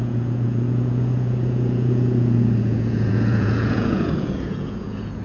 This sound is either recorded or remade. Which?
remade